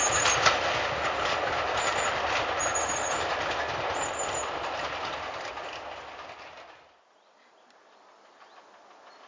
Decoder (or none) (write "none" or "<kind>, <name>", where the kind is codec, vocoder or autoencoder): none